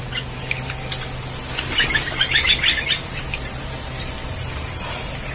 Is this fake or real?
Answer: real